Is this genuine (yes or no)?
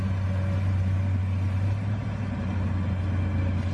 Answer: yes